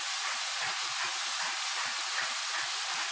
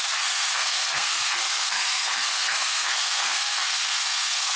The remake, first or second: second